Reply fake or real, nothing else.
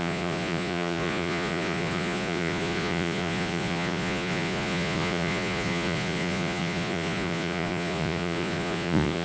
fake